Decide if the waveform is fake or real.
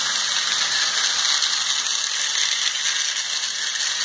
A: real